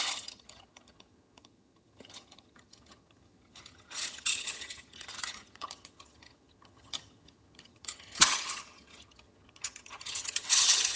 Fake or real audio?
fake